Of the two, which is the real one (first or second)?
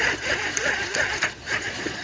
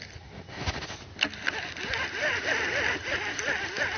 second